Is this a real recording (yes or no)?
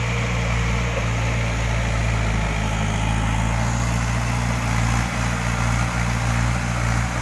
yes